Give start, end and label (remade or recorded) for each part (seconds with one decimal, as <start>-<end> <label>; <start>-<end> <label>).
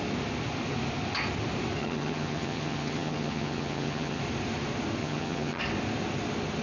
0.0-1.8 recorded; 1.8-4.2 remade; 4.2-5.0 recorded; 5.0-5.6 remade; 5.6-6.6 recorded